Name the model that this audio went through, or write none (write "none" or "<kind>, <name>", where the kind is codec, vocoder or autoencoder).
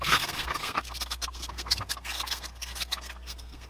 codec, SNAC